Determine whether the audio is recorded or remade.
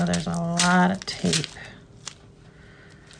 recorded